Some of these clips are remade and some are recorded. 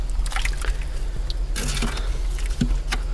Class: recorded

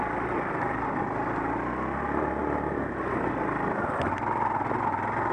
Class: recorded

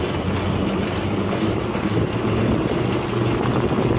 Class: recorded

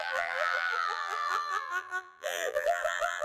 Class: remade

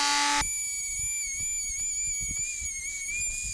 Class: recorded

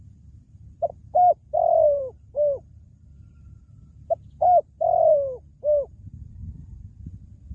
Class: remade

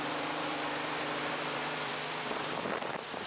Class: remade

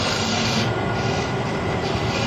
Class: remade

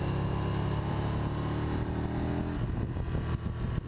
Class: recorded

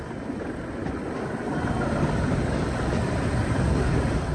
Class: remade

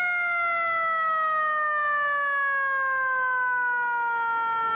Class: recorded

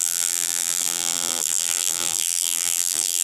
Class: remade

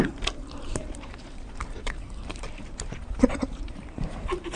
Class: remade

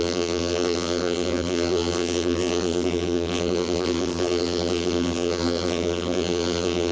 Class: remade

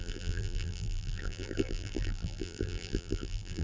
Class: remade